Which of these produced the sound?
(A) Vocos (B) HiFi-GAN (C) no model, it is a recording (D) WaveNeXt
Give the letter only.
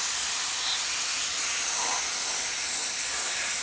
C